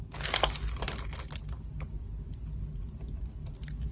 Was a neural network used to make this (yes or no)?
no